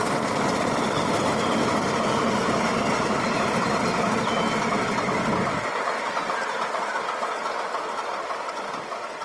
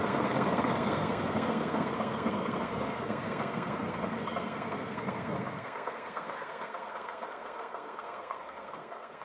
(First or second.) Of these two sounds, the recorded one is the first